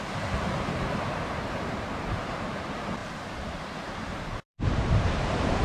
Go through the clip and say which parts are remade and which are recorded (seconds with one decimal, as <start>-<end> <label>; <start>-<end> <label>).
0.0-5.6 remade